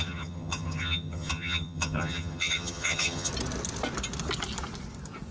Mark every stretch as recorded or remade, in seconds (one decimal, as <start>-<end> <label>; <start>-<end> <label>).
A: 0.0-3.3 remade; 3.3-5.3 recorded